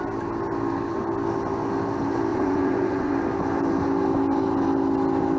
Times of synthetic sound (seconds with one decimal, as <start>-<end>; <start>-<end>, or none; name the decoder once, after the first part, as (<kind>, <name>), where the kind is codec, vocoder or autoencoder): 2.3-3.1 (vocoder, Vocos)